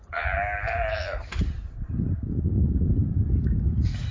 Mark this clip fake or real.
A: real